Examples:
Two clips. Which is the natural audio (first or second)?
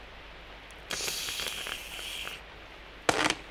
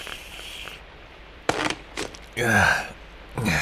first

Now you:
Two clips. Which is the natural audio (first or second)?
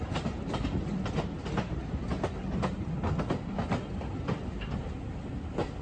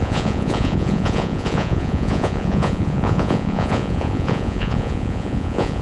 first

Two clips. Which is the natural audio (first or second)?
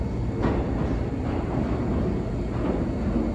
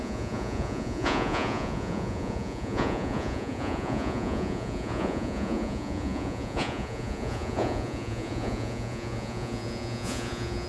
first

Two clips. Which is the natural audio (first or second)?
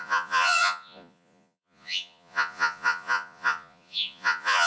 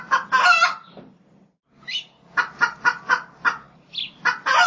second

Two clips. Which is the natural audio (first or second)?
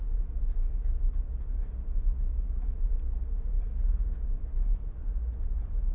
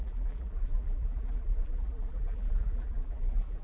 first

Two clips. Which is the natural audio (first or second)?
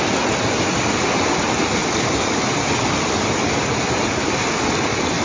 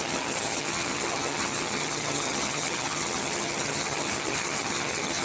first